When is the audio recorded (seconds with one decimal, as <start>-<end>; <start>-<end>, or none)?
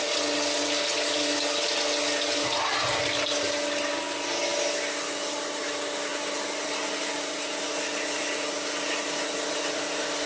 0.0-10.3